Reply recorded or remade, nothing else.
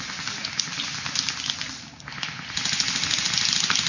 recorded